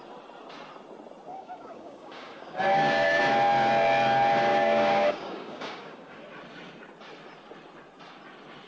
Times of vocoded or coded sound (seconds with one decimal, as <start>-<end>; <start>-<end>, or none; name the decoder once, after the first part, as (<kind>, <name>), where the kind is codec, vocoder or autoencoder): 1.3-3.2 (codec, DAC); 4.5-6.2